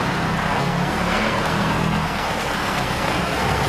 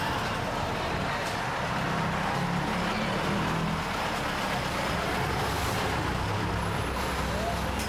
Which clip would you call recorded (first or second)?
second